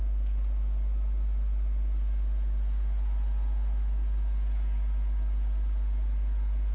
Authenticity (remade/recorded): recorded